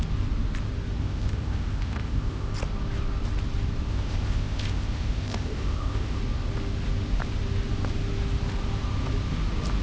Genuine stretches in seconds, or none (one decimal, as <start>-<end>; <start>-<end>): 0.0-1.0; 2.5-3.9; 6.2-9.8